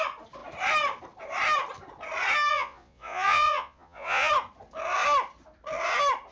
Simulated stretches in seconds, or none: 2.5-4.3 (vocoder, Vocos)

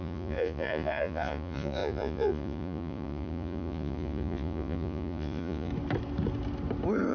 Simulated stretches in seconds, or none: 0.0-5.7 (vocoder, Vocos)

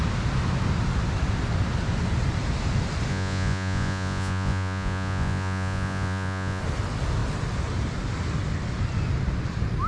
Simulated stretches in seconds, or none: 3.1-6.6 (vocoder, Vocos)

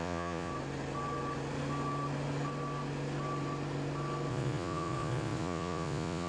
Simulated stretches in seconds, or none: 0.0-0.5 (vocoder, Vocos); 4.3-6.3